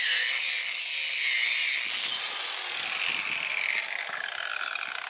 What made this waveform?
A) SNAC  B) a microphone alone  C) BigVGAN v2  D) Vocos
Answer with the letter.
B